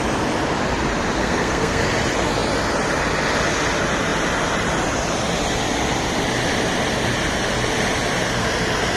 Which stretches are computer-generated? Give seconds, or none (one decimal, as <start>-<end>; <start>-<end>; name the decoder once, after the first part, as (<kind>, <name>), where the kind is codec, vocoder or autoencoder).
1.2-1.8 (codec, SNAC)